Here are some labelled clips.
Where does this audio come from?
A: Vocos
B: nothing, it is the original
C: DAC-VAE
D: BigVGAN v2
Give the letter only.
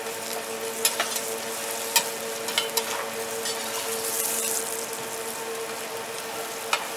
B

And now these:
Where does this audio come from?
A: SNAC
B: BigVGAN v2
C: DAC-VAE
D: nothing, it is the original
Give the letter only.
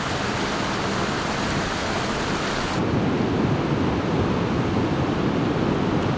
D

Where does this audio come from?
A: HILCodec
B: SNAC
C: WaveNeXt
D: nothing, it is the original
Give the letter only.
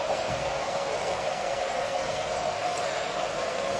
B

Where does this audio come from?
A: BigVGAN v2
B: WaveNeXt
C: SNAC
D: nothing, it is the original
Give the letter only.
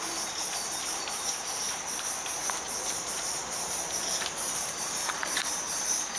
A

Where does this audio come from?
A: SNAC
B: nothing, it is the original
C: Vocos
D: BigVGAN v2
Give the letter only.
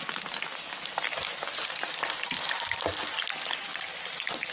B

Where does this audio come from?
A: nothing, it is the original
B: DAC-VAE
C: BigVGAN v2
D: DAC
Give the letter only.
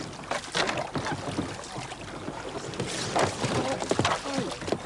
A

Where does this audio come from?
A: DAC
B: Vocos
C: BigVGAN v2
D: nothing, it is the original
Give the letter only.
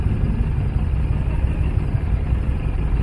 D